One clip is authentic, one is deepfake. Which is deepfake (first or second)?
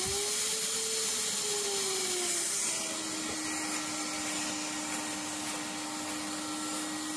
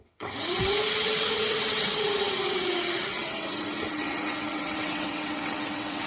second